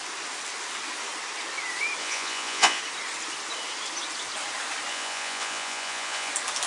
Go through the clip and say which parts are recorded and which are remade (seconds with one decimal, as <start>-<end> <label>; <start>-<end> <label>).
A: 0.0-2.0 recorded; 2.0-2.8 remade; 2.8-4.9 recorded; 4.9-6.3 remade; 6.3-6.7 recorded